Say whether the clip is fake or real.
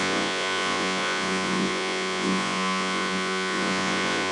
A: fake